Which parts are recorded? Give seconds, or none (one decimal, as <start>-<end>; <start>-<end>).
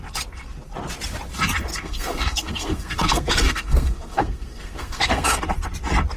0.0-1.7; 5.4-6.2